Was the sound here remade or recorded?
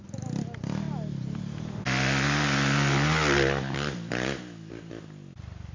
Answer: recorded